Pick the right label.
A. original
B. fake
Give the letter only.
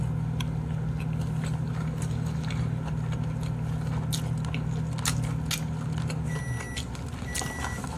A